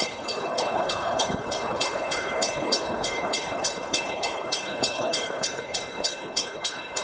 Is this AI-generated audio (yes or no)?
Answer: yes